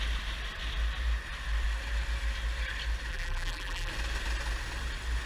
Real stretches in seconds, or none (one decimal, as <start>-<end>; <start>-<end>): 0.0-3.1; 3.9-5.3